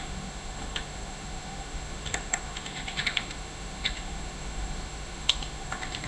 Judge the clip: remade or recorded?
remade